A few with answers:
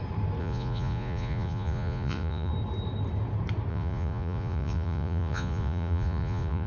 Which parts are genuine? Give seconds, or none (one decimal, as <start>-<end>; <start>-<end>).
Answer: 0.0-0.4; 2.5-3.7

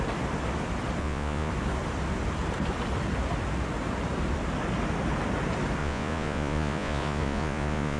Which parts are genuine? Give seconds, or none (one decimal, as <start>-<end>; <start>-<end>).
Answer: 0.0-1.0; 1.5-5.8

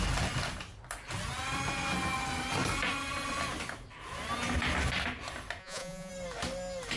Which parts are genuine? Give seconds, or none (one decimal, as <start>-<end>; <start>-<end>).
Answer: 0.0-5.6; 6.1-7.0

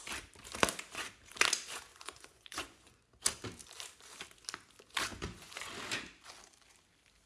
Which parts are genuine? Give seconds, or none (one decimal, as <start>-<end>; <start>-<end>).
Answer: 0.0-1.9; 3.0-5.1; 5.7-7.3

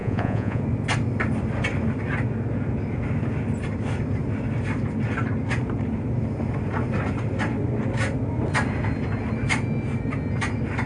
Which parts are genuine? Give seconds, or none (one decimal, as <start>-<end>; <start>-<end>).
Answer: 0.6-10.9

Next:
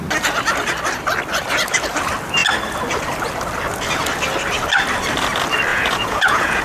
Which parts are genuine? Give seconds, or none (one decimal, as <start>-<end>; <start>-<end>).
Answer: 0.0-5.7